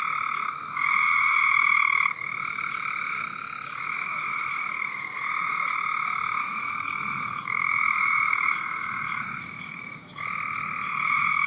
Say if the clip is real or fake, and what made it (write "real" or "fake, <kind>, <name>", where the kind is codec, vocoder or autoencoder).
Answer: fake, autoencoder, DAC-VAE